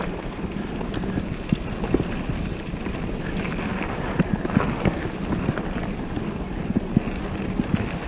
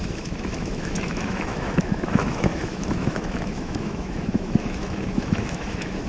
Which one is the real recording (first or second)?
first